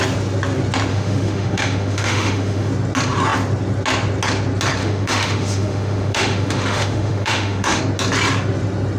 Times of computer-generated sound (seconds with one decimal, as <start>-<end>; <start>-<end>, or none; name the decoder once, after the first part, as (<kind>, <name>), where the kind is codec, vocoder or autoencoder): 0.9-2.7 (autoencoder, DAC-VAE); 4.8-7.8